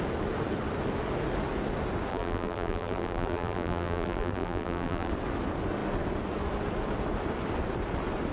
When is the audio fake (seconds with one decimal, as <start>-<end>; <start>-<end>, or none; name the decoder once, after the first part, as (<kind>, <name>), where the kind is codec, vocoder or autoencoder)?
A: 2.1-5.1 (vocoder, BigVGAN v2)